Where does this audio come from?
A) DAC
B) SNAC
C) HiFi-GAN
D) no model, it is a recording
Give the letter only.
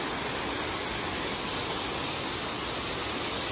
D